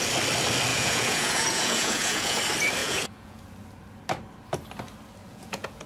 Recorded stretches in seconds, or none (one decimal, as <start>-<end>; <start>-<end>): 0.0-0.7; 2.4-2.8; 3.4-5.2